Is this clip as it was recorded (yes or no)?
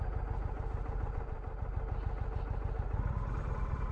yes